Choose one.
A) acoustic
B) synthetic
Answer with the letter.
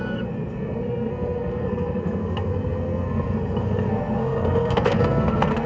B